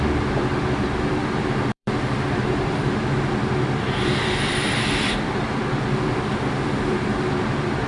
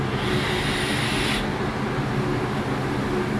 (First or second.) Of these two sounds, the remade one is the first